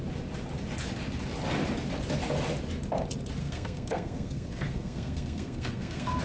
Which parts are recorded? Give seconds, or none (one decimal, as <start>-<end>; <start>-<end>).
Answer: 0.0-3.4